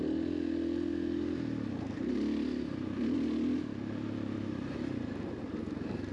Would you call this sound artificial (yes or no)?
no